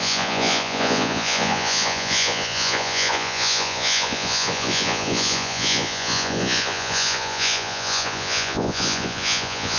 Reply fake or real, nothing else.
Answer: fake